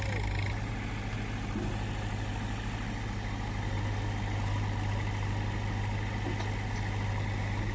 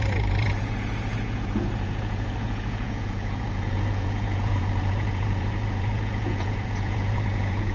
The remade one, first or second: second